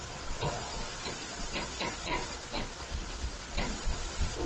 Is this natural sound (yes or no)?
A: no